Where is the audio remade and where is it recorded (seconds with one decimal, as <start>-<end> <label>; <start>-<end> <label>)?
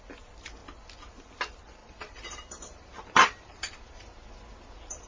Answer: 0.0-1.8 recorded; 1.8-5.1 remade